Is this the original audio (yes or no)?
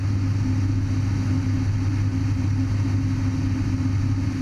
yes